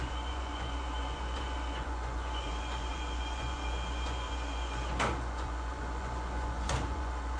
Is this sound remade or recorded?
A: remade